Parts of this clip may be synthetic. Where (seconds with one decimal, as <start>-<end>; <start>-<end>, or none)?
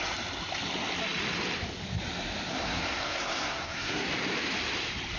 2.5-4.1